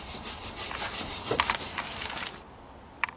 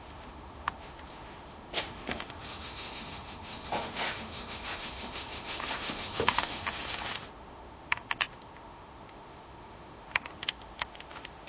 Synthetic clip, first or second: second